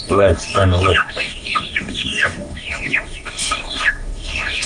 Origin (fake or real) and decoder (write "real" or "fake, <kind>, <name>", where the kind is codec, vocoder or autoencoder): fake, codec, DAC